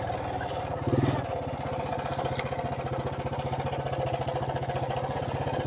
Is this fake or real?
real